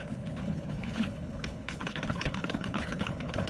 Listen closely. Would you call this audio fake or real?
fake